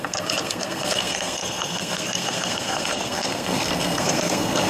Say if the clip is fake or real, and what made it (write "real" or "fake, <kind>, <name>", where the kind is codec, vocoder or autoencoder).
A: fake, codec, SNAC